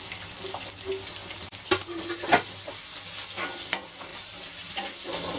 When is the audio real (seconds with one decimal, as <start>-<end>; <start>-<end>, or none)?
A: 0.0-5.4